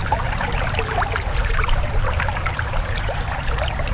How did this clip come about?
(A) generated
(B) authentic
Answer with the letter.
A